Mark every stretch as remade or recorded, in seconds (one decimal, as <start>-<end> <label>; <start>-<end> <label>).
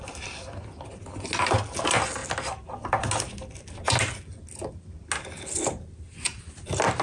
0.0-7.0 recorded